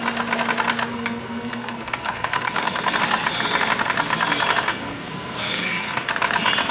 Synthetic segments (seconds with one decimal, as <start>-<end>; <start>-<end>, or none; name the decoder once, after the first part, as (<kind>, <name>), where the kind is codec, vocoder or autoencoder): 0.9-3.0 (codec, SNAC); 4.7-6.1